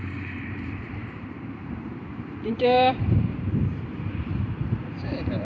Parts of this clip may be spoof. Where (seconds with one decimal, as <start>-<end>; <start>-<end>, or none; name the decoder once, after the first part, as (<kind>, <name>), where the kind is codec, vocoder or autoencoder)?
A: 0.0-5.4 (vocoder, BigVGAN v2)